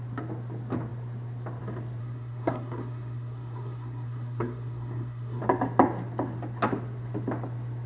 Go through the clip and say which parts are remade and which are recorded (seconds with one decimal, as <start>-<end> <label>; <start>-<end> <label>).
0.0-2.0 recorded; 2.0-5.4 remade; 5.4-7.9 recorded